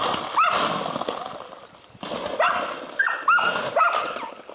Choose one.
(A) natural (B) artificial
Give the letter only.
A